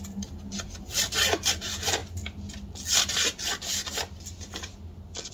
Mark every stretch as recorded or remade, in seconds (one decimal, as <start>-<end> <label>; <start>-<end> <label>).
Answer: 0.0-5.3 recorded